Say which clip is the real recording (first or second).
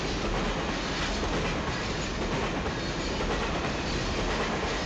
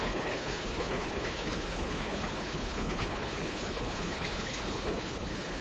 first